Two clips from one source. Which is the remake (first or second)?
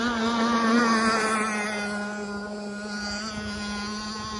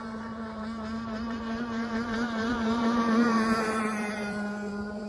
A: second